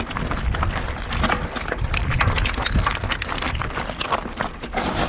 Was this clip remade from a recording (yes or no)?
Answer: no